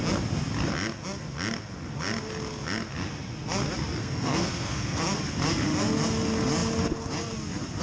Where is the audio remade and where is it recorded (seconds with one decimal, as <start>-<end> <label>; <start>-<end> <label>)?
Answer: 0.0-4.0 recorded; 4.0-5.0 remade; 5.0-7.8 recorded